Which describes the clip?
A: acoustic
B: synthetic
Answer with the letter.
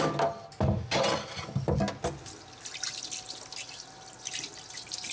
A